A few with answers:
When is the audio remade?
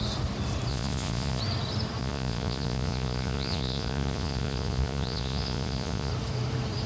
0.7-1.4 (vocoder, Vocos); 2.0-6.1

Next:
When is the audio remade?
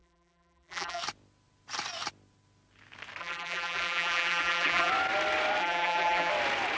0.0-1.0 (vocoder, BigVGAN v2); 3.2-4.9; 5.6-6.3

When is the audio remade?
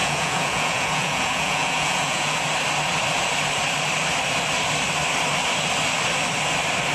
0.0-2.4 (vocoder, Vocos)